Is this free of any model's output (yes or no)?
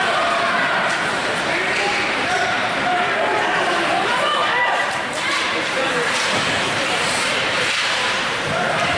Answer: no